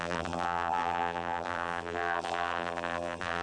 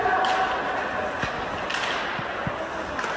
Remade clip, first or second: first